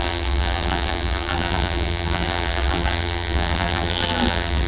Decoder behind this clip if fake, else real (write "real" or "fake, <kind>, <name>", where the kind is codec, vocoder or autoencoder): fake, vocoder, BigVGAN v2